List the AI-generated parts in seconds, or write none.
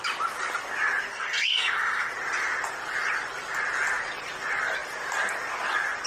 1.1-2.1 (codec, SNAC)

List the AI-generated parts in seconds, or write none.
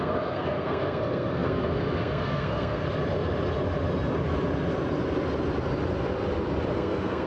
0.0-2.8 (codec, SNAC); 6.7-7.3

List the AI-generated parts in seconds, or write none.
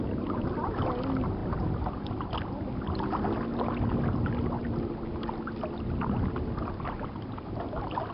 1.4-2.7 (vocoder, BigVGAN v2)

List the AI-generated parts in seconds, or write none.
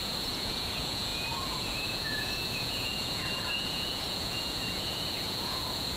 0.0-6.0 (vocoder, Vocos)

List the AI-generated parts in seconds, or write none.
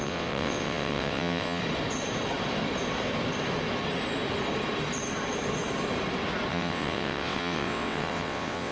0.0-1.6 (vocoder, WaveNeXt); 6.5-8.7